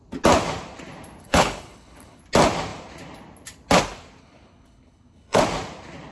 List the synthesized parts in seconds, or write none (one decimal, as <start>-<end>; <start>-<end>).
1.2-2.2; 4.2-5.4